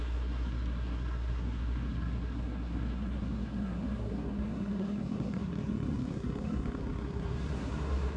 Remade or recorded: remade